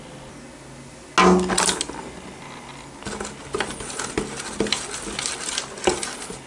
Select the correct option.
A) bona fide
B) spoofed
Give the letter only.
A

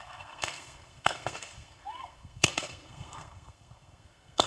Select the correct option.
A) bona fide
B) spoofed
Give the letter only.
B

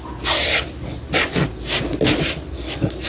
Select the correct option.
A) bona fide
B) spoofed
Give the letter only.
A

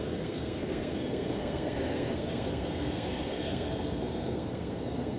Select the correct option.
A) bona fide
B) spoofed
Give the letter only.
B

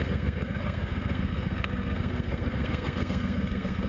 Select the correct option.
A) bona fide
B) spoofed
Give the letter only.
B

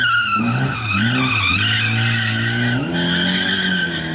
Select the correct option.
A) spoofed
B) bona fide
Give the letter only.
B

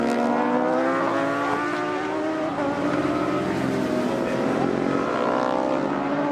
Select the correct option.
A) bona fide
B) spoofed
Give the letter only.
A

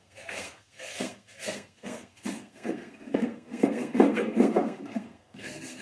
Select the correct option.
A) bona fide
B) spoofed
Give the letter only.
B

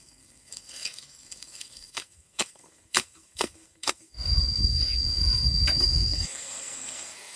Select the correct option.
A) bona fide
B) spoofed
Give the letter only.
B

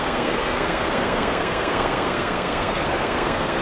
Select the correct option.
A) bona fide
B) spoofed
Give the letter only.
B